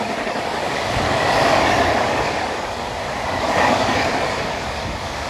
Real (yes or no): no